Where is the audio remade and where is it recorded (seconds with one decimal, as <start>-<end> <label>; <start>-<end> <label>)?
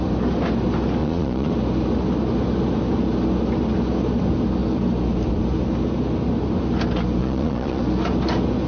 0.0-1.0 recorded; 1.0-1.5 remade; 1.5-7.2 recorded; 7.2-7.8 remade; 7.8-8.7 recorded